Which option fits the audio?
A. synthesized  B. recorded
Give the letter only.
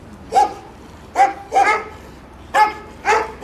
B